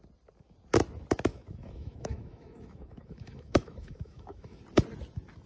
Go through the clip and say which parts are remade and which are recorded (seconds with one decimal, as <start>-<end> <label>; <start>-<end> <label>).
0.0-1.3 recorded; 1.3-4.6 remade; 4.6-5.5 recorded